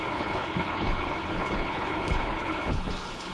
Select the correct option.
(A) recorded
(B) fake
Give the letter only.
B